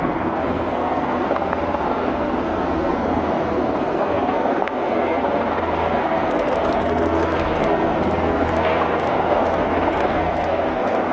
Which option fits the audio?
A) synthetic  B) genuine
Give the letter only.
A